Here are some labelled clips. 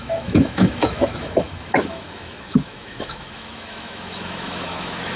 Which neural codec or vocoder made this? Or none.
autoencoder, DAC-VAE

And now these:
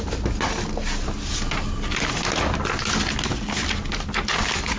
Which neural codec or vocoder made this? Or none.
none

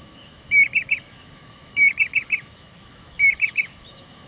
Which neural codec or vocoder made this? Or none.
autoencoder, DAC-VAE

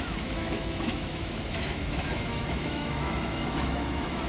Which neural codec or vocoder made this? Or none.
autoencoder, DAC-VAE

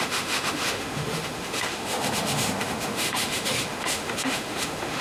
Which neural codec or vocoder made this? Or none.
autoencoder, DAC-VAE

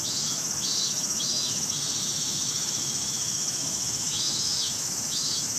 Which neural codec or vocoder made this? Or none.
autoencoder, DAC-VAE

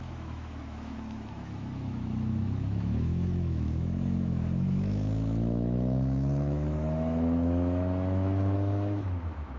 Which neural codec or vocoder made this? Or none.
autoencoder, DAC-VAE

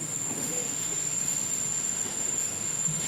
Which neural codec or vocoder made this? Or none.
autoencoder, DAC-VAE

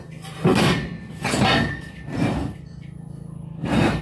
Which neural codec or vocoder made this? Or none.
none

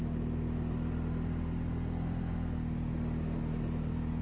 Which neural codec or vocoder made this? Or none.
none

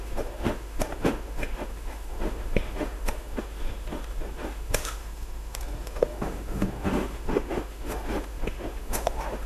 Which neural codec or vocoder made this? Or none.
autoencoder, DAC-VAE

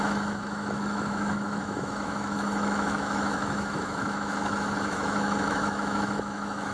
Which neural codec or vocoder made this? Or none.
autoencoder, DAC-VAE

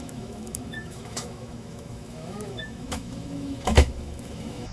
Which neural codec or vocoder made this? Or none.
autoencoder, DAC-VAE